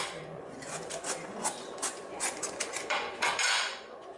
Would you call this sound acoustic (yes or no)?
no